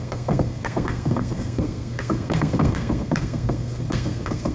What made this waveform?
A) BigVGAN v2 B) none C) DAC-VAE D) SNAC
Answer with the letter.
D